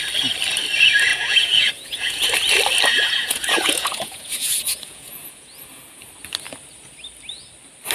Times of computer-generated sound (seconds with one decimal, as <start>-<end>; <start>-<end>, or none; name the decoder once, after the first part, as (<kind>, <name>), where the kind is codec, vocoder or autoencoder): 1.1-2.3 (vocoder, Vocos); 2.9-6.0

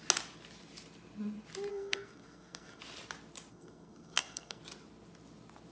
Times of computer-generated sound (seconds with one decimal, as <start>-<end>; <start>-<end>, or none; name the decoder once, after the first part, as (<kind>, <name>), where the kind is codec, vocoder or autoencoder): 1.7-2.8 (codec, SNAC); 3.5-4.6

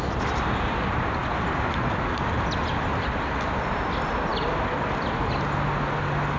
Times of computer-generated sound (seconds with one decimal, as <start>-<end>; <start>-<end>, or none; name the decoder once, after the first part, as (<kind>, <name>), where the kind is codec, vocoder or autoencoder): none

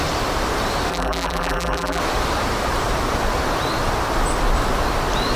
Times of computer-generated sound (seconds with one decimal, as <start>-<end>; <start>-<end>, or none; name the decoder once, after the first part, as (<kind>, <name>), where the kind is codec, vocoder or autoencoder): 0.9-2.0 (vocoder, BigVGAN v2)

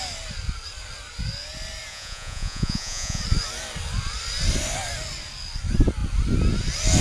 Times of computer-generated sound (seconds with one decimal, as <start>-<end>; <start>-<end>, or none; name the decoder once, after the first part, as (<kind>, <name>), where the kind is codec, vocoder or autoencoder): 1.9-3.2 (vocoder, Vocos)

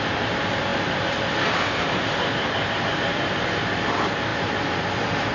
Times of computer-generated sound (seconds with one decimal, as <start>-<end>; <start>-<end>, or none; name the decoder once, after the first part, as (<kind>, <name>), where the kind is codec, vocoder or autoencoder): none

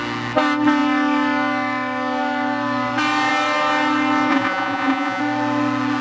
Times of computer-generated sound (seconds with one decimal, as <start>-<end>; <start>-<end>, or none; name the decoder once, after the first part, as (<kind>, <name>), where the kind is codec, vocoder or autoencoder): 4.3-5.2 (vocoder, Vocos)